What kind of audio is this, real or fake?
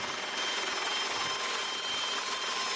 real